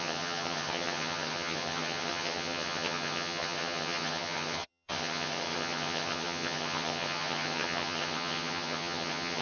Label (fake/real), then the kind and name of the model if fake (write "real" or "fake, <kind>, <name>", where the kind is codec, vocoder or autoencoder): fake, vocoder, HiFi-GAN